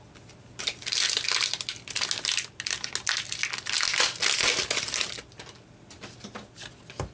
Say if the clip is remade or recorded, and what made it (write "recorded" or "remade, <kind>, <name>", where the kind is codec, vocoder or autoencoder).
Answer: recorded